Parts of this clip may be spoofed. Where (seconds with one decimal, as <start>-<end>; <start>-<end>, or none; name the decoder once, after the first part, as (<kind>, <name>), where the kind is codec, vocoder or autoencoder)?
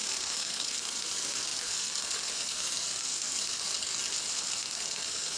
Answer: 0.0-3.7 (codec, SNAC); 4.3-5.4